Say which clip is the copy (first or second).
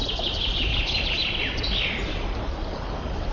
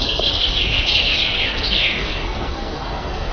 second